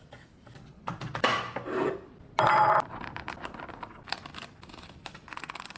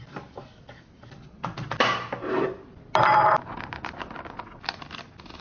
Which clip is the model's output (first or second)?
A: first